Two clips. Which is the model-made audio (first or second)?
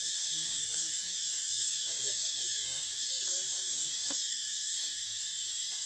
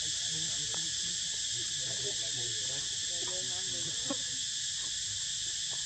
first